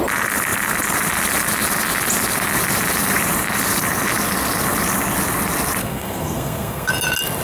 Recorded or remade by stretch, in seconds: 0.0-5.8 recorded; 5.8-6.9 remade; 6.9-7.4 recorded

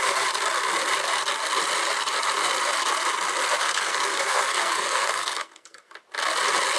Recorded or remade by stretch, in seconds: 0.0-3.6 recorded; 3.6-5.9 remade; 5.9-6.8 recorded

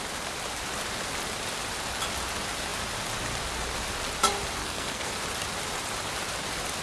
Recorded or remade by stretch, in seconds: 0.0-4.6 recorded; 4.6-5.1 remade; 5.1-6.8 recorded

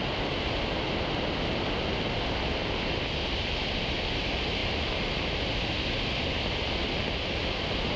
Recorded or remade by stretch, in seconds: 0.0-8.0 recorded

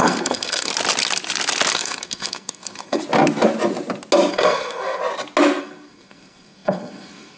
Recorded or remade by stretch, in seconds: 0.0-0.7 remade; 0.7-1.7 recorded; 1.7-3.0 remade; 3.0-4.3 recorded; 4.3-5.0 remade; 5.0-5.6 recorded; 5.6-7.4 remade